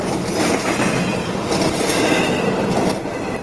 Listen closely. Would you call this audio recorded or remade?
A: recorded